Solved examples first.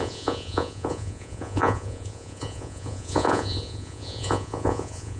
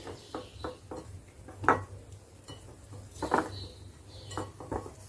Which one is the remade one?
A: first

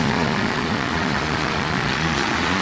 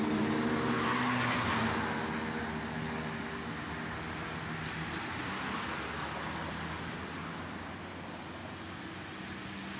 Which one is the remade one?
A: first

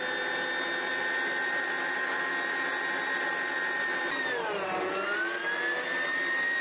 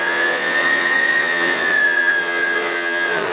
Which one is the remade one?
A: second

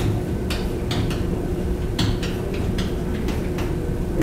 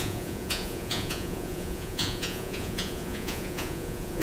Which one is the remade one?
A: second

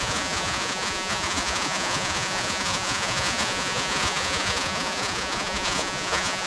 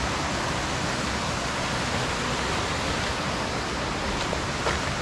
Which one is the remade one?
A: first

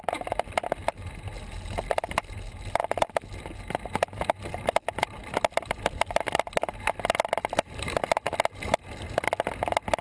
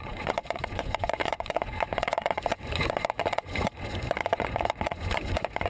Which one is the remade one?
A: second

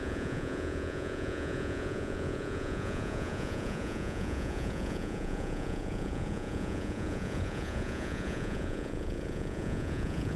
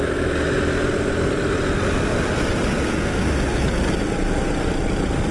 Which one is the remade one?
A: first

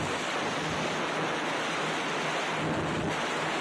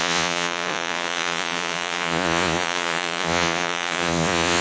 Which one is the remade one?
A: second